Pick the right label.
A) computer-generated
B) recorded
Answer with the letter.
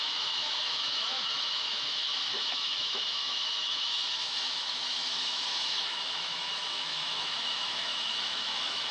A